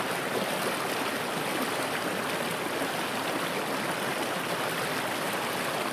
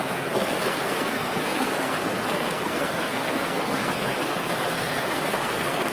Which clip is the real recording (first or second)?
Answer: first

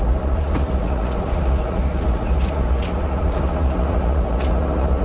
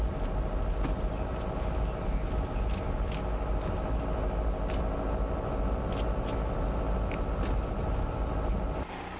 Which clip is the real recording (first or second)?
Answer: second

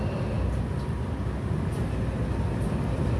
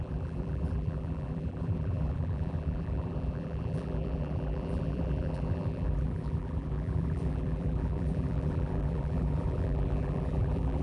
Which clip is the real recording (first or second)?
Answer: first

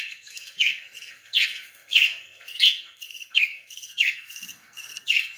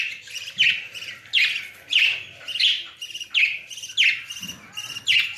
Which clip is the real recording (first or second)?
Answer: second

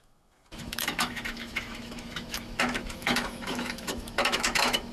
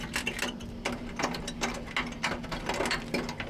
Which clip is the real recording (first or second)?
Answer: second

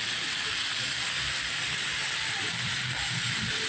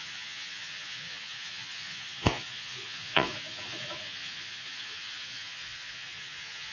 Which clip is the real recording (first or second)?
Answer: first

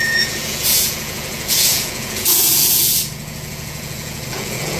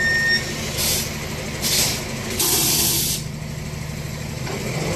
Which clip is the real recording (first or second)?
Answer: second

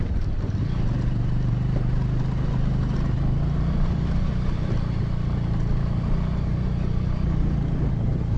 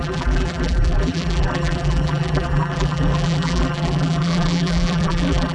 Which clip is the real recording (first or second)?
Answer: first